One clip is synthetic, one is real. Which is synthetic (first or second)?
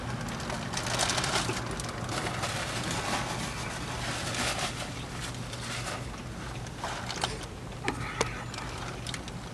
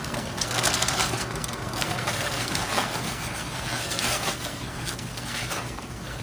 second